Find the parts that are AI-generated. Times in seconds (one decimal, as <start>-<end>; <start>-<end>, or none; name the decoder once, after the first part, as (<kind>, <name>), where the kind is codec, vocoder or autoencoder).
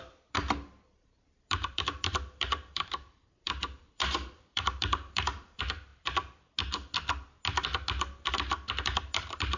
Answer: 0.0-5.9 (vocoder, BigVGAN v2); 8.3-9.6